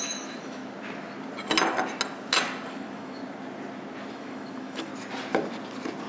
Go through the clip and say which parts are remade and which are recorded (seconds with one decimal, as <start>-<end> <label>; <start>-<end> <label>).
0.0-0.6 remade; 0.6-2.7 recorded; 2.7-3.2 remade; 3.2-4.1 recorded; 4.1-4.9 remade; 4.9-6.1 recorded